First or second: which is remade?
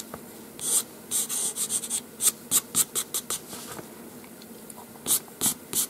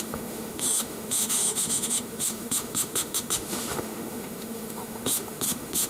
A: second